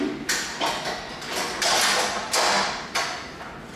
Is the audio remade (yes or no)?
no